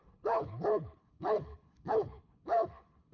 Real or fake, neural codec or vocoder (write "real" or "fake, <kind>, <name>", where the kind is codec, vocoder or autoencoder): fake, codec, HILCodec